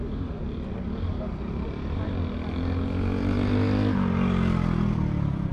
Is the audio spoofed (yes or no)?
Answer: no